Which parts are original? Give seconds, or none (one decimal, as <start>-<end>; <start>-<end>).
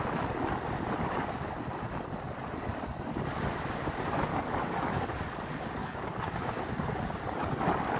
0.0-4.3; 5.1-5.8; 6.4-8.0